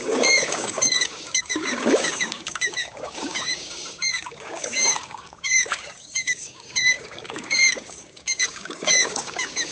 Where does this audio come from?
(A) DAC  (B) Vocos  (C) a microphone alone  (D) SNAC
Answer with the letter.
A